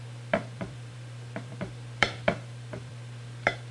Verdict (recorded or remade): remade